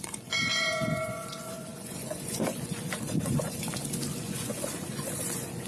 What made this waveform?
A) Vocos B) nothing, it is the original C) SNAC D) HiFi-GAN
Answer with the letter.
A